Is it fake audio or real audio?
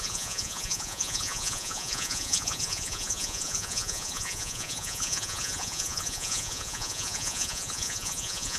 fake